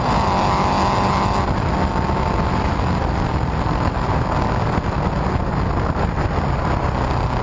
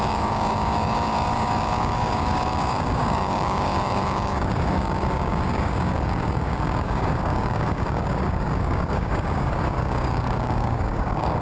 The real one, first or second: first